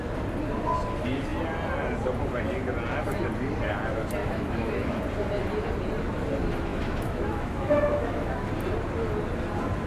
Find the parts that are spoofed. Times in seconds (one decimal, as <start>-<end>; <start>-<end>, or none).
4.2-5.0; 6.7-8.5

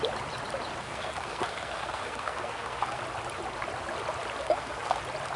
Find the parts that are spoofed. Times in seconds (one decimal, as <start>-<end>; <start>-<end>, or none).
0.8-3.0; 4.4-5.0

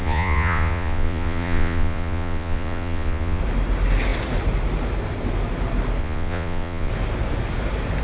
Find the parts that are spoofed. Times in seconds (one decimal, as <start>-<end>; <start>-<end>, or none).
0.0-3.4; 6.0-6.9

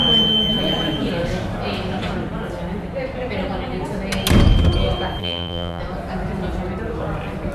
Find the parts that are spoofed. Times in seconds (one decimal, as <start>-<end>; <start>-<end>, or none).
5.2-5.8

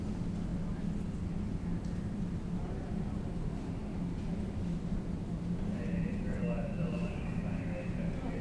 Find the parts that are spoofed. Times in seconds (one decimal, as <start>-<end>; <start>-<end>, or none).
0.0-7.4